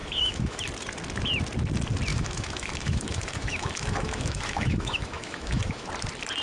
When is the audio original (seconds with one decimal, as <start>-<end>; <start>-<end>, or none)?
0.6-2.1; 5.9-6.4